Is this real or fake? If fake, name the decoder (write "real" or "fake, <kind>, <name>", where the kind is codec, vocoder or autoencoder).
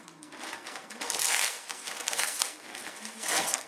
fake, codec, SNAC